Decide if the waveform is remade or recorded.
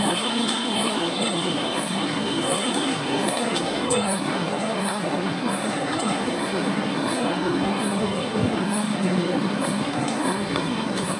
remade